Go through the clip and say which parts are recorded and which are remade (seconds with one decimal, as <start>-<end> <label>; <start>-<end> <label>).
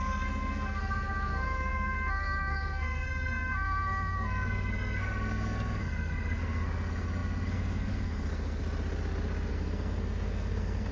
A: 0.0-8.6 remade; 8.6-9.5 recorded; 9.5-10.9 remade